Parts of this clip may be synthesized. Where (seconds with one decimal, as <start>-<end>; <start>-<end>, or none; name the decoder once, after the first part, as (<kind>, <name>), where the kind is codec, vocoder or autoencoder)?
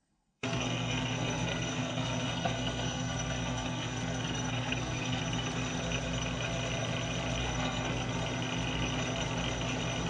0.0-5.2 (codec, SNAC); 7.4-8.1